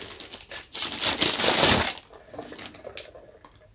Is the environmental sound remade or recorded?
recorded